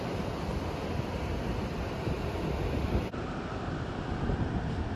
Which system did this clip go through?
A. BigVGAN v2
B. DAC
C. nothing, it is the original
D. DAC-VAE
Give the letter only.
C